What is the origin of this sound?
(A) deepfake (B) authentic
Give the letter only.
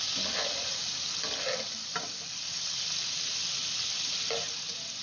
B